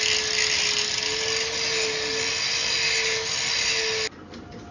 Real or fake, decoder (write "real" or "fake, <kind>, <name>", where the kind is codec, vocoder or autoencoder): real